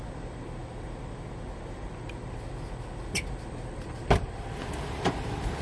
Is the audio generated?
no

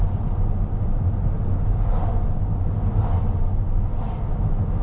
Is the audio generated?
no